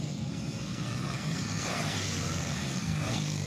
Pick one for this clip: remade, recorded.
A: remade